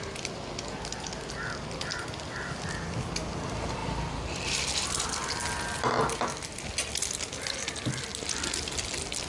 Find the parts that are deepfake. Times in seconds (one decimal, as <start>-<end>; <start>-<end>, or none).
none